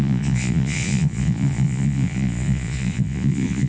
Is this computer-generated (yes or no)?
yes